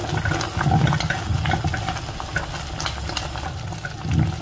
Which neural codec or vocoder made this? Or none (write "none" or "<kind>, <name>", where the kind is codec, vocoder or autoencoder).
none